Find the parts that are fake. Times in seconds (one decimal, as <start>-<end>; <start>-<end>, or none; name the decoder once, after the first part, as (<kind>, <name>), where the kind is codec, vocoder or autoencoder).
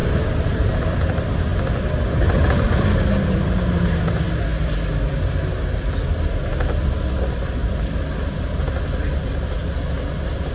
0.0-0.7 (vocoder, BigVGAN v2)